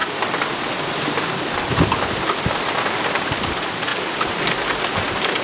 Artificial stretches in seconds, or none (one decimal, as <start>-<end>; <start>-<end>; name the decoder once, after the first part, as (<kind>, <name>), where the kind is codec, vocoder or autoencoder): 0.0-3.2 (vocoder, BigVGAN v2); 3.9-4.8